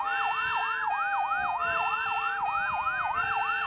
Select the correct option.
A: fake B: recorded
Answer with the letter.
B